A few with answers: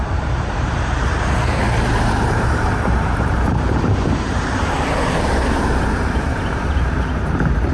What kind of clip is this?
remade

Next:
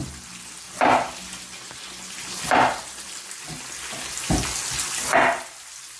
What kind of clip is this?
recorded